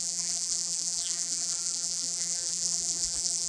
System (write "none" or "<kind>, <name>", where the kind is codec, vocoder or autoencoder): vocoder, BigVGAN v2